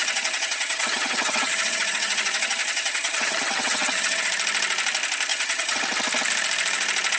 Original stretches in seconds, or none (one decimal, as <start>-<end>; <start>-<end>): 4.3-5.3; 5.8-7.2